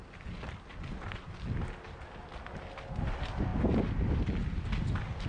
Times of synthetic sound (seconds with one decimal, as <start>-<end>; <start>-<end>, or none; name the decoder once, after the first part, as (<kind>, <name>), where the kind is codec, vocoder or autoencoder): none